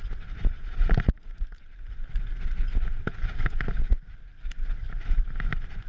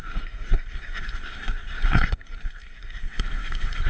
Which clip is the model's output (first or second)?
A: second